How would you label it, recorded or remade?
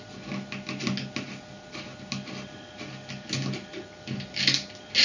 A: recorded